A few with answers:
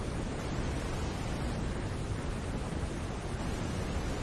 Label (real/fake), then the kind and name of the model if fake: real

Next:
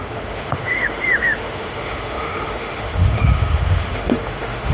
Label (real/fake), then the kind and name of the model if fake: fake, autoencoder, DAC-VAE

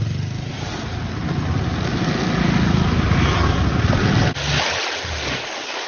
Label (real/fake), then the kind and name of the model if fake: real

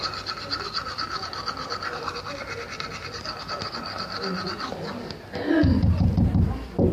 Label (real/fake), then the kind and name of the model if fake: real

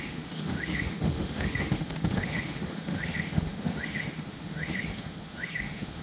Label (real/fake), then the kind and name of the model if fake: fake, autoencoder, DAC-VAE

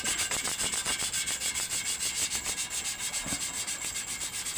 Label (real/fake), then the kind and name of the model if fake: real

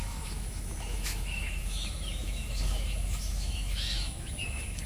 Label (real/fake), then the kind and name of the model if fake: fake, autoencoder, DAC-VAE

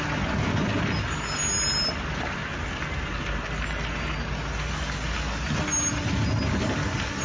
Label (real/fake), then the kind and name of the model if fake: real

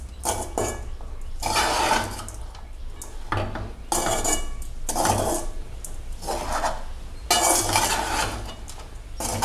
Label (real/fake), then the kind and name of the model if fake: real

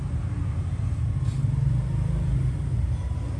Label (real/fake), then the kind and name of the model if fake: real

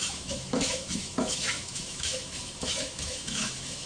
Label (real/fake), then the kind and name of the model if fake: fake, autoencoder, DAC-VAE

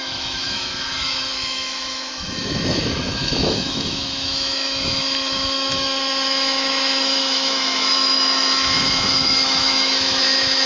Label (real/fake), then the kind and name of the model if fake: fake, autoencoder, DAC-VAE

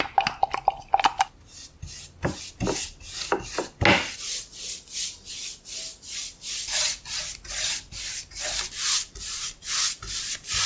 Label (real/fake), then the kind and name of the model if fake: real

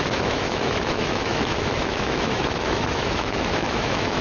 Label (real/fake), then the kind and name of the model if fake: fake, autoencoder, DAC-VAE